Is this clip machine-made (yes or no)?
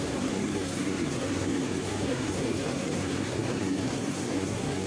yes